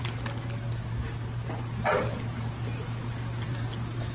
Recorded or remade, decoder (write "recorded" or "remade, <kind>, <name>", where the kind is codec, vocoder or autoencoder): recorded